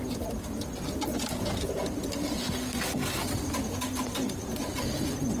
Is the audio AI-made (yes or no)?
no